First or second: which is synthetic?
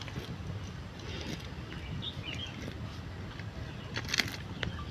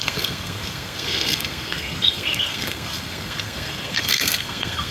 second